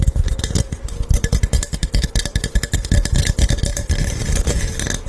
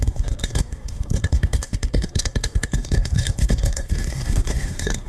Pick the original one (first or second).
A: first